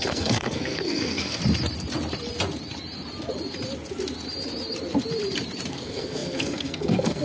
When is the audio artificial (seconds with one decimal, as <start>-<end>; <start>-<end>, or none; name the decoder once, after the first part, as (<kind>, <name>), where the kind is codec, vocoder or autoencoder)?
0.0-1.4 (codec, SNAC); 5.7-7.2